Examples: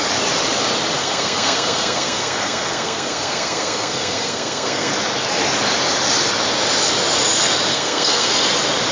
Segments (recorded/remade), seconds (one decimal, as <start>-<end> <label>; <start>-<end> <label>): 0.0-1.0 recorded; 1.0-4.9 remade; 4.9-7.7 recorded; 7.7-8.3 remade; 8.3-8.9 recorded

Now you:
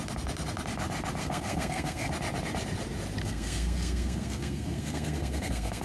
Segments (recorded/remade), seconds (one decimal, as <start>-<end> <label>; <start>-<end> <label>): 0.0-1.2 recorded; 1.2-2.1 remade; 2.1-3.2 recorded; 3.2-5.8 remade

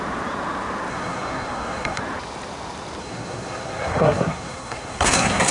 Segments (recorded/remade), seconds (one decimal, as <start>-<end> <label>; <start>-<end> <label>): 0.0-0.9 recorded; 0.9-2.0 remade; 2.0-3.0 recorded; 3.0-5.5 remade

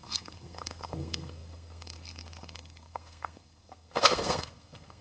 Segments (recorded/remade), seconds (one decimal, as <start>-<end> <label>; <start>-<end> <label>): 0.0-5.0 remade